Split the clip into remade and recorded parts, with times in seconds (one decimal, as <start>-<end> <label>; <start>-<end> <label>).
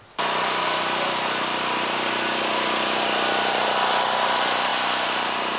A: 0.0-4.7 recorded; 4.7-5.6 remade